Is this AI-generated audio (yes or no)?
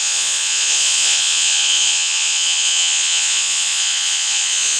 yes